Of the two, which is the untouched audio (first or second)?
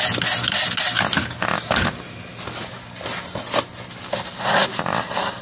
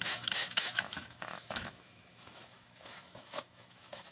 first